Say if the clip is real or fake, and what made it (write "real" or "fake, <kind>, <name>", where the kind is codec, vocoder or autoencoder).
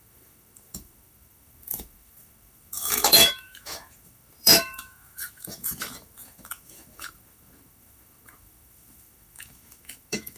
fake, autoencoder, DAC-VAE